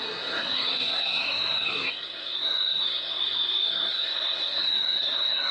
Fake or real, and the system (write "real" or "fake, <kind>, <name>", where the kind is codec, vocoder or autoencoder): fake, codec, SNAC